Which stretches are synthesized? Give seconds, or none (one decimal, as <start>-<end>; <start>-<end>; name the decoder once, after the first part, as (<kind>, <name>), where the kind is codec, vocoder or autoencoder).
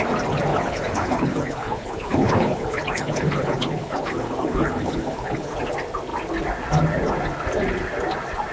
0.5-5.6 (codec, HILCodec)